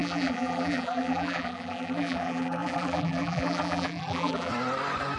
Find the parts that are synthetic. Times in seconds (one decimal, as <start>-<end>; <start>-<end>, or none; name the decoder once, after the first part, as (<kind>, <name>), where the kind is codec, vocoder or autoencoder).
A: 0.0-4.5 (vocoder, BigVGAN v2)